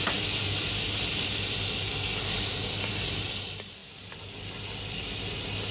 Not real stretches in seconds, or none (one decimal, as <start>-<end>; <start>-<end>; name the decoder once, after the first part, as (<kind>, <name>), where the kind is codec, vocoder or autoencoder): none

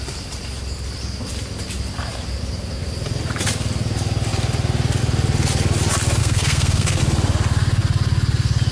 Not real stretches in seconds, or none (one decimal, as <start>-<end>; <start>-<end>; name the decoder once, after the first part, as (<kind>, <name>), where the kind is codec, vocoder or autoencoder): 6.2-7.0 (codec, SNAC)

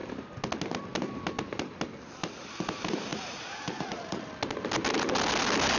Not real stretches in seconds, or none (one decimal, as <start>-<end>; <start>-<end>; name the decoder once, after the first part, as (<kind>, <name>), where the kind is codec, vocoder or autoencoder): 3.1-4.2 (vocoder, Vocos)

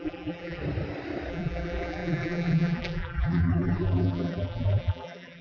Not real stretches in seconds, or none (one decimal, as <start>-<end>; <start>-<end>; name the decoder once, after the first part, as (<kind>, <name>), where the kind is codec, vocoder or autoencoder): 0.0-0.6 (vocoder, BigVGAN v2); 1.3-5.4